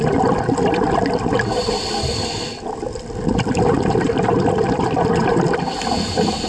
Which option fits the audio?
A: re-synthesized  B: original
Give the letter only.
B